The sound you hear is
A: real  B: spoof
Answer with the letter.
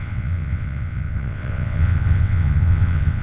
B